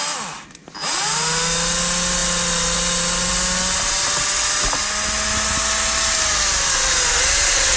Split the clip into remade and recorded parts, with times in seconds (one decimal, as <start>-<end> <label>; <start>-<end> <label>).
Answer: 0.0-7.8 recorded